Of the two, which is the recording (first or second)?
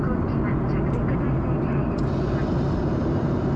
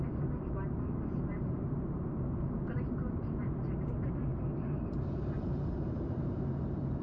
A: first